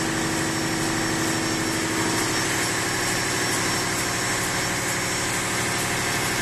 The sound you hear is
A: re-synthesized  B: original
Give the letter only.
B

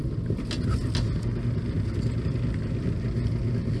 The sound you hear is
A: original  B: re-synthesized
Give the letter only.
A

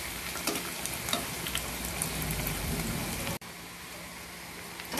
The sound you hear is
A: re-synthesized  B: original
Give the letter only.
B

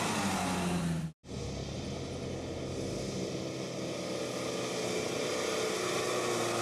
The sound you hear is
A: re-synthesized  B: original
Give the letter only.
B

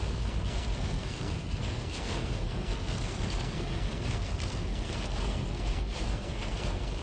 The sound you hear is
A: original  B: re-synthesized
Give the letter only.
B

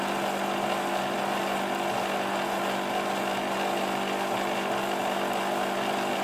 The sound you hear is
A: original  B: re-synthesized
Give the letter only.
A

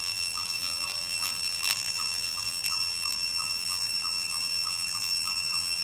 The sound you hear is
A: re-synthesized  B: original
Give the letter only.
A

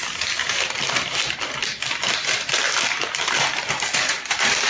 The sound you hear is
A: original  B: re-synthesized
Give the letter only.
A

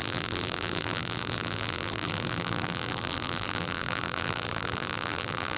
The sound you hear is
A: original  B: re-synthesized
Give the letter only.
B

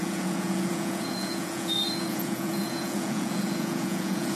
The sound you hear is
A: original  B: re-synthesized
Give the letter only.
B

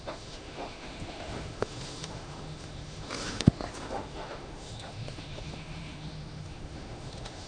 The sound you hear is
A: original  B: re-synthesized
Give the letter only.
B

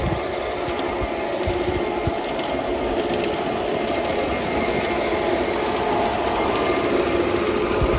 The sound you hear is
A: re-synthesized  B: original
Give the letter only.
B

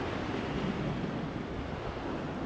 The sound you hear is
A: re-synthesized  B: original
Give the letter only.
B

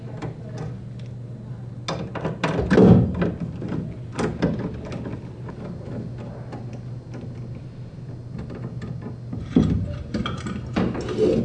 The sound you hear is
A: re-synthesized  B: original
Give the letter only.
B